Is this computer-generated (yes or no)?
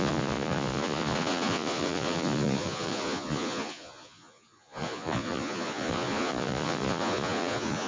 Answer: yes